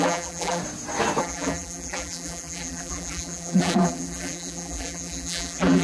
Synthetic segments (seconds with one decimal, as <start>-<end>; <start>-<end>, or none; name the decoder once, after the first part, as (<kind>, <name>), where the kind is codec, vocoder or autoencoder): 0.0-0.6 (vocoder, BigVGAN v2); 1.2-5.8